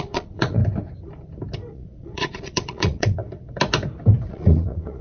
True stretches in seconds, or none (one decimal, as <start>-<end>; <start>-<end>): 0.6-1.7; 3.2-4.3